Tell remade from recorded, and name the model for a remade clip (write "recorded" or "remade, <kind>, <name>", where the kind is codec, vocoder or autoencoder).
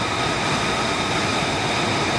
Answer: recorded